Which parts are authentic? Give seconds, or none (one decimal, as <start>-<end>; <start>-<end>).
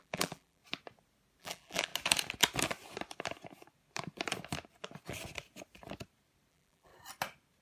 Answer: 0.6-1.4; 1.9-6.5; 6.9-7.6